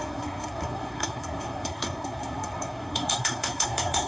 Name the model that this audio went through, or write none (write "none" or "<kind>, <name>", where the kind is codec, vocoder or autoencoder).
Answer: codec, SNAC